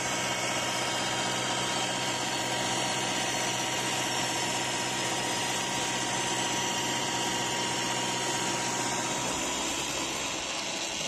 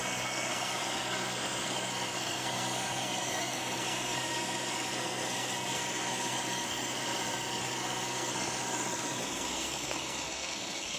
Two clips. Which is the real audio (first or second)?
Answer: first